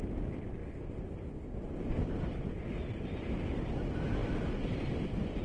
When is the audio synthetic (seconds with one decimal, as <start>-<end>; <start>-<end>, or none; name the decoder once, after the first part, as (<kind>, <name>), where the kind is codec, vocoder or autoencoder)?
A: none